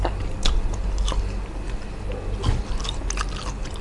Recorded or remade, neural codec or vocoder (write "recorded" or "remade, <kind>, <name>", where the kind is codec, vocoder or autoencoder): recorded